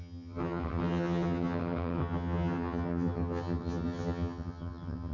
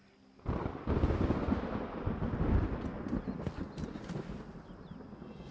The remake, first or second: first